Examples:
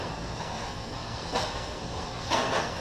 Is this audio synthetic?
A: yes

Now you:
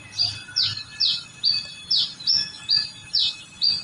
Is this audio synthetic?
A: no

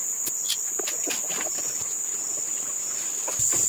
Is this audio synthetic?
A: no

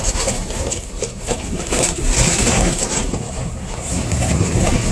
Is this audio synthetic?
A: yes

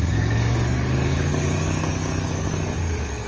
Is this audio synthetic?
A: yes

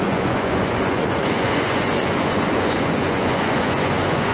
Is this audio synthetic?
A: yes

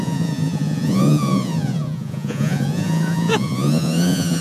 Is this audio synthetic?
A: yes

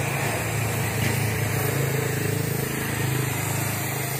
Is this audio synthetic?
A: no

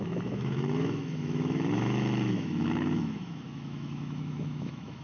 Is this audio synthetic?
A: yes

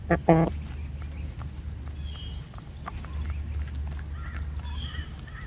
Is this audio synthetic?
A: no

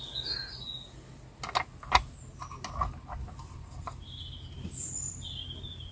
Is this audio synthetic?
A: no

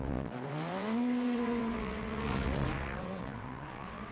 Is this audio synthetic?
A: yes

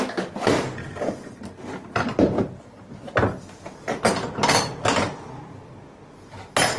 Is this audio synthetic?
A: no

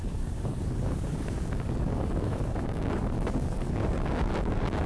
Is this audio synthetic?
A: yes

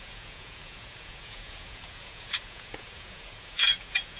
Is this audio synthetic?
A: yes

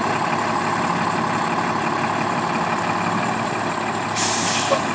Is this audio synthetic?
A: no